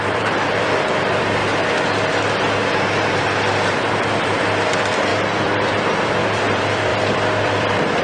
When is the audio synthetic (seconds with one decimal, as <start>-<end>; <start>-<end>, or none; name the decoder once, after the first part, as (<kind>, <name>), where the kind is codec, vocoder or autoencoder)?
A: 0.0-1.4 (vocoder, BigVGAN v2); 3.2-8.0